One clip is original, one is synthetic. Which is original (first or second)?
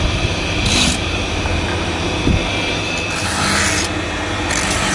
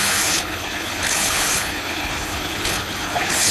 first